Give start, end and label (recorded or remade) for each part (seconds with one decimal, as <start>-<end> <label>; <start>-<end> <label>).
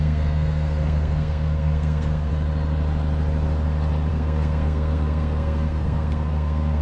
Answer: 0.0-2.3 remade; 2.3-4.1 recorded; 4.1-6.8 remade